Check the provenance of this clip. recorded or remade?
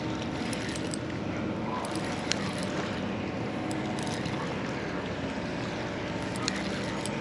recorded